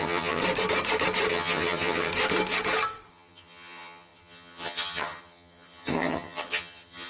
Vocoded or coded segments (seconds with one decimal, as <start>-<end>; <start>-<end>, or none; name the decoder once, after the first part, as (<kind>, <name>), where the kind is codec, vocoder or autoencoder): 0.0-0.4 (vocoder, HiFi-GAN); 1.3-2.1; 3.1-7.1